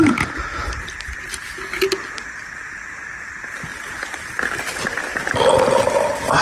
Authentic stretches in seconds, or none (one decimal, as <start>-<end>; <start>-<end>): 0.0-6.4